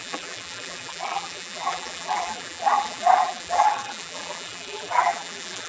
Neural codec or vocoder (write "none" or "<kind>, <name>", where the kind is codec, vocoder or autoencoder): vocoder, BigVGAN v2